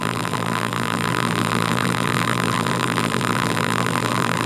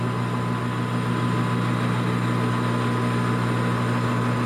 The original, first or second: second